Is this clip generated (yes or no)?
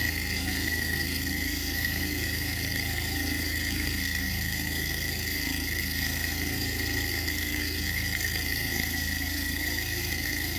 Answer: yes